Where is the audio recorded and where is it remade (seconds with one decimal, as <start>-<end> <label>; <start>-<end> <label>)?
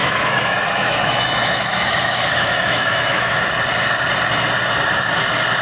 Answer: 0.0-3.4 remade; 3.4-5.6 recorded